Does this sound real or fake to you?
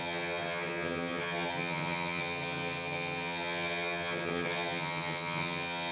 fake